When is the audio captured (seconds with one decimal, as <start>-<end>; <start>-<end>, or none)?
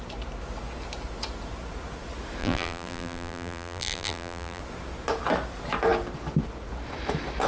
0.0-2.4; 4.6-7.5